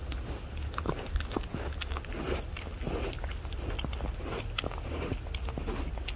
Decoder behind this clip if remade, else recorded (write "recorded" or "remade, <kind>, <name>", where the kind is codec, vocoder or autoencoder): recorded